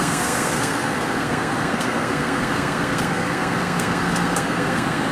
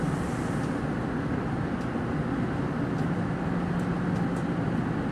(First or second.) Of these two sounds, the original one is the second